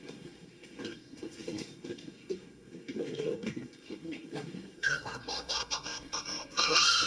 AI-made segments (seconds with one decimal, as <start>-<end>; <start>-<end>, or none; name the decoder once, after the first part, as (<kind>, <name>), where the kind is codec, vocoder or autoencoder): 0.0-7.1 (codec, SNAC)